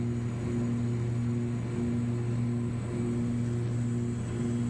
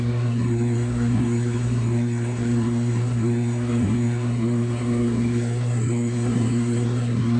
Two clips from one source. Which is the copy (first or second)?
second